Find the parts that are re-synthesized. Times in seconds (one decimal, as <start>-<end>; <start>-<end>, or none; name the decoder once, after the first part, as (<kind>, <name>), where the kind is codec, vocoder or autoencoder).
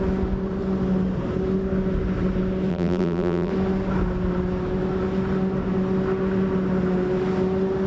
2.7-3.5 (vocoder, BigVGAN v2)